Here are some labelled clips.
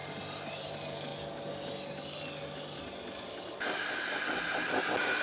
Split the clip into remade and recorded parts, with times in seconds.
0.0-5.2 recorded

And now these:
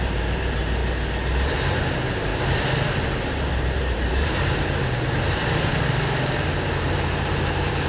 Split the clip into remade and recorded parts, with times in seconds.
0.0-0.8 remade; 0.8-1.5 recorded; 1.5-2.3 remade; 2.3-3.5 recorded; 3.5-7.9 remade

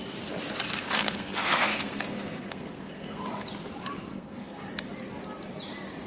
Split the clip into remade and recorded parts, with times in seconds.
0.0-0.7 recorded; 0.7-3.2 remade; 3.2-4.1 recorded; 4.1-4.6 remade; 4.6-6.1 recorded

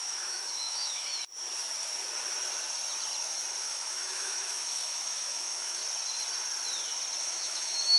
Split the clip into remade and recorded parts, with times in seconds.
0.0-1.1 remade; 1.1-3.6 recorded; 3.6-5.8 remade; 5.8-7.2 recorded; 7.2-8.0 remade